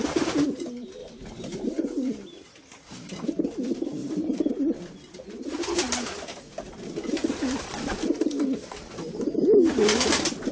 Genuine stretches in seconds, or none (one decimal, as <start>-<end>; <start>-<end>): 0.0-1.0; 1.7-4.0; 4.5-5.7; 8.7-10.5